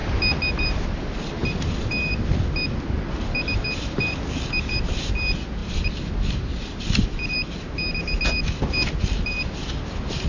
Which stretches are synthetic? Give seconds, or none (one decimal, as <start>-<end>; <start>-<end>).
none